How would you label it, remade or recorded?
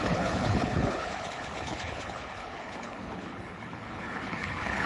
remade